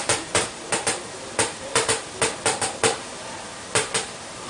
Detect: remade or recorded remade